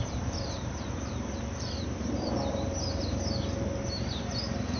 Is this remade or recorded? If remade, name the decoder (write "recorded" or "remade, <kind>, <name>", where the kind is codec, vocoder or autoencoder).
remade, vocoder, BigVGAN v2